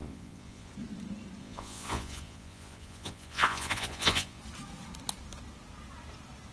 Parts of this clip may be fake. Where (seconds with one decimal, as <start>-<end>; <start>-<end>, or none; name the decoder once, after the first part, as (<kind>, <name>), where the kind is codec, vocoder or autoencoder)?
0.0-0.7 (vocoder, Vocos); 1.4-4.4

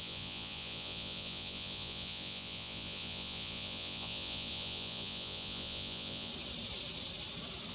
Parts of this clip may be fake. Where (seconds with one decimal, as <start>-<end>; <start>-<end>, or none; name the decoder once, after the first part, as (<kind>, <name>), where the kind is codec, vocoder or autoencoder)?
0.0-6.3 (vocoder, Vocos)